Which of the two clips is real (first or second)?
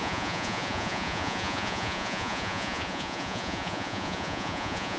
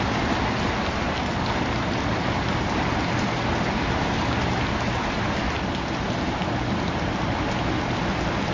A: second